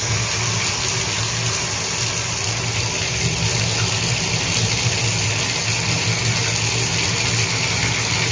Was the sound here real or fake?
real